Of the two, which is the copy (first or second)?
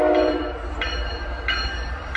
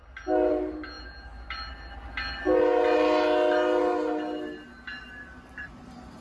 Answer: first